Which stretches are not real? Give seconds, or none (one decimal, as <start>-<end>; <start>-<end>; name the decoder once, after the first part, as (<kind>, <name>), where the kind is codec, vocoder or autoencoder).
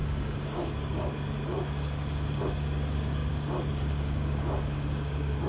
0.0-5.5 (codec, DAC)